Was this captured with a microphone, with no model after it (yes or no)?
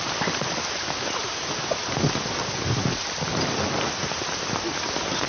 yes